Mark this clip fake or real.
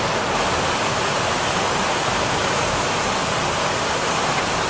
real